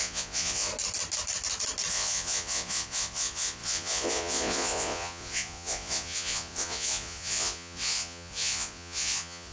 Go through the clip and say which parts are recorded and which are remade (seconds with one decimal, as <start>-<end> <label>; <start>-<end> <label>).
0.0-0.7 remade; 0.7-1.9 recorded; 1.9-9.5 remade